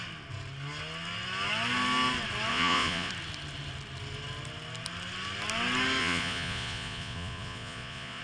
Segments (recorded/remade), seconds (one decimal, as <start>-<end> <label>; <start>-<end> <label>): 0.0-2.5 recorded; 2.5-3.1 remade; 3.1-6.0 recorded; 6.0-8.2 remade